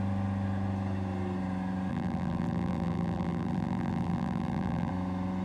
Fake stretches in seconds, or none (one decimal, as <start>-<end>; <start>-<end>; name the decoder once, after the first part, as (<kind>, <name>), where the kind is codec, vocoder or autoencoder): 1.9-4.9 (vocoder, BigVGAN v2)